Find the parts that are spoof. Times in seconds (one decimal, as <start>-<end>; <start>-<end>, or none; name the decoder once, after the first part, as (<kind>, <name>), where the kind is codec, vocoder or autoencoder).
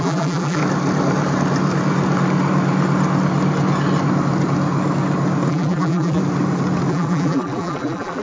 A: 0.0-0.6 (vocoder, BigVGAN v2); 5.5-6.2; 6.9-8.2